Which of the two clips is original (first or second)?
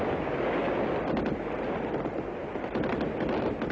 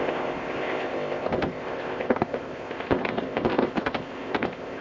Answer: first